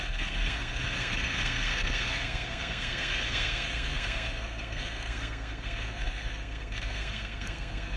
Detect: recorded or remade remade